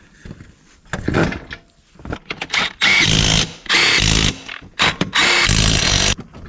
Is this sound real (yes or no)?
yes